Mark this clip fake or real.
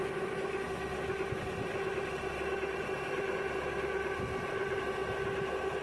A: real